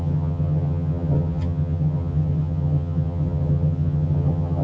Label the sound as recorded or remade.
remade